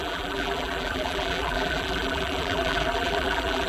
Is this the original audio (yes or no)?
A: no